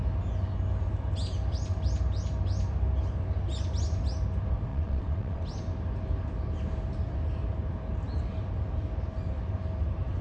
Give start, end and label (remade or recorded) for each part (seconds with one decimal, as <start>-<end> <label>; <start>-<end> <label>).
0.0-4.7 recorded; 4.7-5.4 remade; 5.4-10.2 recorded